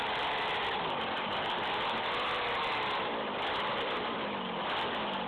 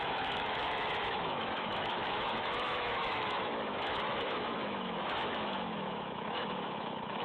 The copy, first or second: second